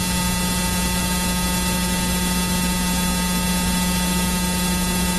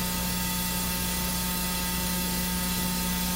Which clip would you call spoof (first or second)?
second